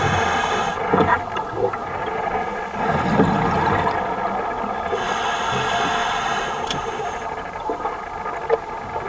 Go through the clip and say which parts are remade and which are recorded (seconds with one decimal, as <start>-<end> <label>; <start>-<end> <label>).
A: 0.0-1.8 recorded; 1.8-2.6 remade; 2.6-6.0 recorded; 6.0-8.1 remade; 8.1-9.1 recorded